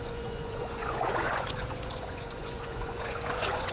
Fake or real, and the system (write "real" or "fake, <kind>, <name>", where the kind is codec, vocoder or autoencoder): fake, vocoder, Vocos